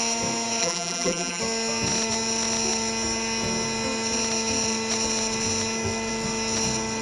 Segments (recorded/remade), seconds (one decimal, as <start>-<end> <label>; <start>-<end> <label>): 0.0-0.6 recorded; 0.6-1.4 remade; 1.4-7.0 recorded